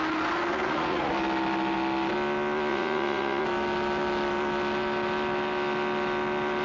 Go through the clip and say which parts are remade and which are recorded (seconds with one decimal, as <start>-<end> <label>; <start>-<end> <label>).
0.0-0.5 recorded; 0.5-1.1 remade; 1.1-2.7 recorded; 2.7-3.4 remade; 3.4-6.6 recorded